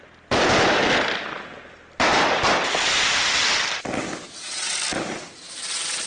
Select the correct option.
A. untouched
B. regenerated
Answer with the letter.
A